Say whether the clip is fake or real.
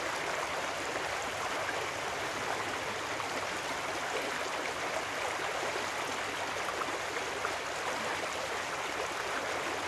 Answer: real